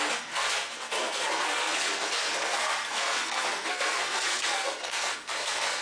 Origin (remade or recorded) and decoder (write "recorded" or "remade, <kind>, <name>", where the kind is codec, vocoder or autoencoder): remade, codec, SNAC